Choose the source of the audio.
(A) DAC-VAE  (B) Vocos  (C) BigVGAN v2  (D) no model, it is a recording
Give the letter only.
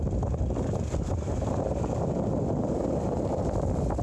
D